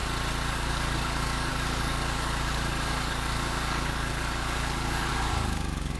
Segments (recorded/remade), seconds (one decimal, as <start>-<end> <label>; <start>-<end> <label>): 0.0-0.5 recorded; 0.5-6.0 remade